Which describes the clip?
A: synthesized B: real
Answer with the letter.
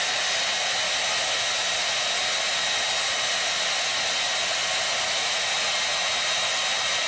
B